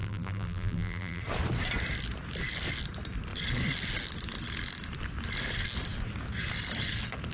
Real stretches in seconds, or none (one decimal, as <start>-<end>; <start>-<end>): 1.2-7.3